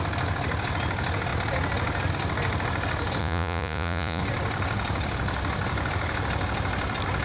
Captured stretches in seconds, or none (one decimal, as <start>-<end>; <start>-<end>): 0.0-3.2; 4.2-7.2